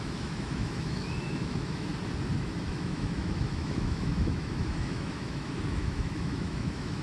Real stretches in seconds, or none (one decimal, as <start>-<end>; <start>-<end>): 1.9-2.5